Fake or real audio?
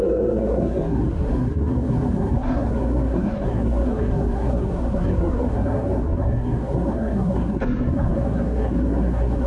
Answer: fake